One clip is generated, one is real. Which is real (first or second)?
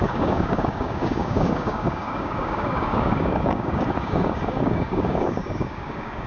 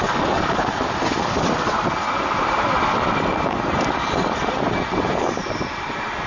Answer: second